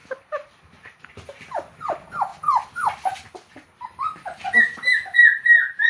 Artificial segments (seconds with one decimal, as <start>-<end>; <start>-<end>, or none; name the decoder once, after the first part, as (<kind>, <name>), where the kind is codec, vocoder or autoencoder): 0.0-1.1 (vocoder, BigVGAN v2)